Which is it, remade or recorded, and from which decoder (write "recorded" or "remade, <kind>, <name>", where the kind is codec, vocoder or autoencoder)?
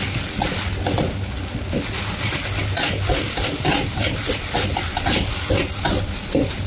recorded